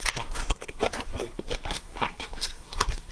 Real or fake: fake